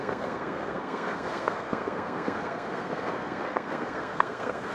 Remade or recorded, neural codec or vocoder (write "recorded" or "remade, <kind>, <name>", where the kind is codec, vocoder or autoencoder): remade, codec, SNAC